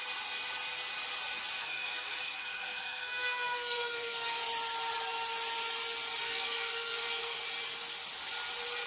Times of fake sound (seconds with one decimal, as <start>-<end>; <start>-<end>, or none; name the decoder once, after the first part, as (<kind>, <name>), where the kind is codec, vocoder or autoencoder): 1.6-4.4 (codec, SNAC); 6.2-7.4

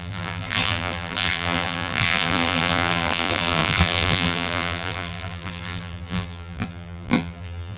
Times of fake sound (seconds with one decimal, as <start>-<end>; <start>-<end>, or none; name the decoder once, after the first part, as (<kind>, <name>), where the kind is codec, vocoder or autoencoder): 0.0-7.8 (vocoder, BigVGAN v2)

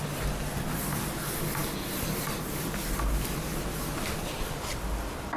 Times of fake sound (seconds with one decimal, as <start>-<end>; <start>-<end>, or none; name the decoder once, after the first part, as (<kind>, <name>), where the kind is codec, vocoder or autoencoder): none

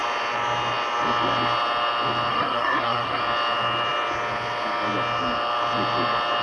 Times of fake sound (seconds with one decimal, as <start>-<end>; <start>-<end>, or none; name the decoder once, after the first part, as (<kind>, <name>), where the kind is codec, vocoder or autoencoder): 2.3-3.2 (codec, SNAC)

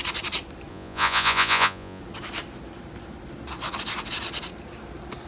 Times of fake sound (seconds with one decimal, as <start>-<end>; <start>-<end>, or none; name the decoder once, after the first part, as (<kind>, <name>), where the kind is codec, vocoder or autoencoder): 0.7-2.0 (vocoder, Vocos)